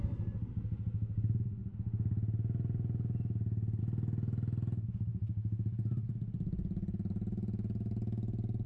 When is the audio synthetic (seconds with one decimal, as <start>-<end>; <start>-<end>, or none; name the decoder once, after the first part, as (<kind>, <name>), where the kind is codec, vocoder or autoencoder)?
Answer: none